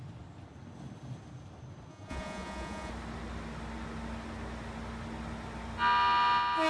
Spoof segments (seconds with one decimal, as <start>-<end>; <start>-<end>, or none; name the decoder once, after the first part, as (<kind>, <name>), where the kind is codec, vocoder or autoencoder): 1.9-2.9 (vocoder, Vocos)